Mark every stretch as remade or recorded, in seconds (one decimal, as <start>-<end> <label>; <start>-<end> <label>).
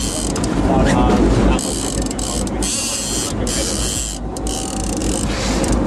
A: 0.0-5.9 recorded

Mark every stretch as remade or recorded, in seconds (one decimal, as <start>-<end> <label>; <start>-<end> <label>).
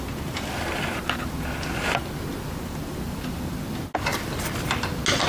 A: 0.0-5.3 recorded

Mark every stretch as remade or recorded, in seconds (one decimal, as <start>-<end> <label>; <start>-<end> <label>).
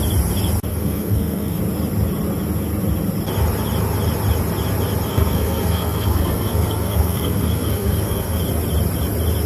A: 0.0-0.7 recorded; 0.7-1.6 remade; 1.6-5.1 recorded; 5.1-8.4 remade; 8.4-9.5 recorded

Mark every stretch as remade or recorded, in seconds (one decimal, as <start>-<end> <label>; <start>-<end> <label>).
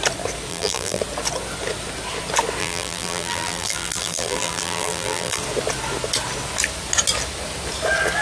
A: 0.0-0.5 recorded; 0.5-1.0 remade; 1.0-2.6 recorded; 2.6-5.4 remade; 5.4-8.2 recorded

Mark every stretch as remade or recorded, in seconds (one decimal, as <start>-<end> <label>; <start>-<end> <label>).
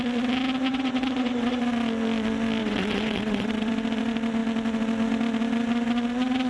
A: 0.0-0.7 recorded; 0.7-1.6 remade; 1.6-2.6 recorded; 2.6-3.7 remade; 3.7-6.5 recorded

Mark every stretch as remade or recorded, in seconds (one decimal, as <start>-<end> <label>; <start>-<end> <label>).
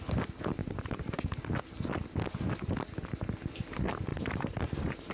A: 0.0-0.6 recorded; 0.6-1.4 remade; 1.4-4.1 recorded; 4.1-5.1 remade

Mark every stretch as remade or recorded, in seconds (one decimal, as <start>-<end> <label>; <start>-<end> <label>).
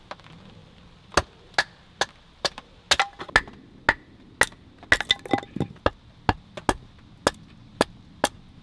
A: 0.0-8.6 recorded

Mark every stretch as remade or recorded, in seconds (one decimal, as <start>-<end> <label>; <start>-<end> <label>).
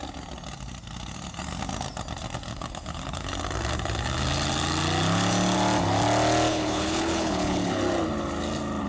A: 0.0-2.5 recorded; 2.5-3.3 remade; 3.3-6.5 recorded; 6.5-7.8 remade; 7.8-8.9 recorded